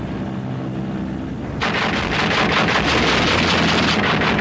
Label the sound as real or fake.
real